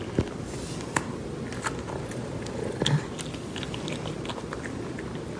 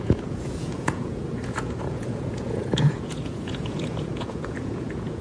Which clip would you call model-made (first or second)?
second